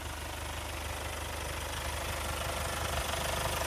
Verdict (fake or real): real